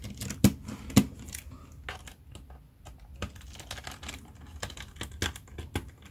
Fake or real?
real